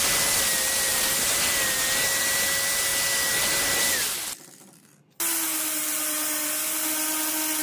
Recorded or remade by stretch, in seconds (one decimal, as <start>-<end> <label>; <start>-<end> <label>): 0.0-7.6 recorded